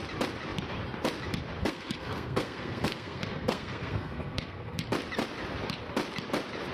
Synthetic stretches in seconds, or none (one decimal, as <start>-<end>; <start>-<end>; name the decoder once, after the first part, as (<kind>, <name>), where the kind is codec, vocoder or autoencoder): 1.6-4.8 (codec, SNAC)